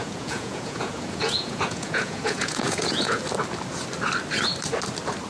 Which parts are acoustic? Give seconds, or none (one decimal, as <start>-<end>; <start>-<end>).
3.2-5.3